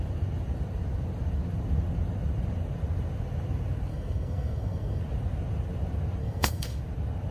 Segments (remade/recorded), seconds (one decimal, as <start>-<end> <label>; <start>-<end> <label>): 0.0-3.9 recorded; 3.9-5.0 remade; 5.0-6.2 recorded; 6.2-6.8 remade; 6.8-7.3 recorded